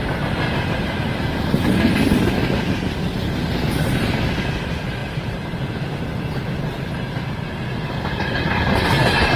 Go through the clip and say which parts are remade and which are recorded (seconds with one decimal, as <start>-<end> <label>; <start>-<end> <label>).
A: 0.0-1.0 remade; 1.0-5.0 recorded; 5.0-5.7 remade; 5.7-9.4 recorded